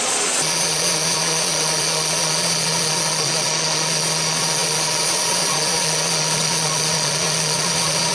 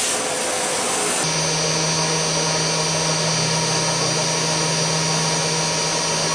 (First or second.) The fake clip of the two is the first